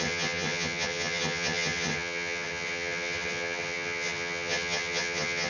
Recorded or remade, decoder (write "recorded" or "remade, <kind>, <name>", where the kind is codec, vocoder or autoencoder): remade, vocoder, HiFi-GAN